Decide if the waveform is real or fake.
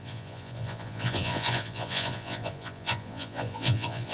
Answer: fake